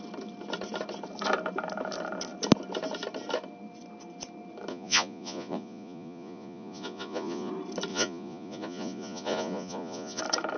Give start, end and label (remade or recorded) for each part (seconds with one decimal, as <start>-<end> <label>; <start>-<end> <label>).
0.0-4.7 recorded; 4.7-7.5 remade; 7.5-7.9 recorded; 7.9-10.2 remade; 10.2-10.6 recorded